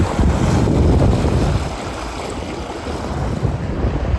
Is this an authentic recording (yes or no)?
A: yes